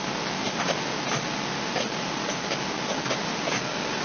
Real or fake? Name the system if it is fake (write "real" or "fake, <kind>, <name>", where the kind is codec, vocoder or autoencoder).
real